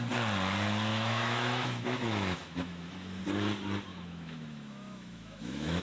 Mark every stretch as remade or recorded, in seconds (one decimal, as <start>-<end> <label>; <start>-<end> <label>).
0.0-0.9 recorded; 0.9-3.2 remade; 3.2-3.9 recorded; 3.9-5.8 remade